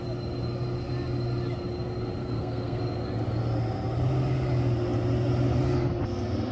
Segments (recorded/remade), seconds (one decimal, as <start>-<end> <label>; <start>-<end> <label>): 0.0-2.2 recorded; 2.2-2.8 remade; 2.8-6.5 recorded